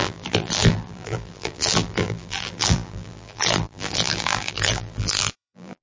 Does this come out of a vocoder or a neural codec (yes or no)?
yes